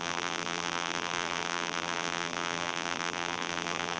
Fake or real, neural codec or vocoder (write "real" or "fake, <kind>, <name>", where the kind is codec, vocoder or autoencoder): fake, vocoder, BigVGAN v2